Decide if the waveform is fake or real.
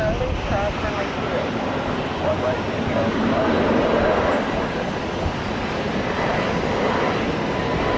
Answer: real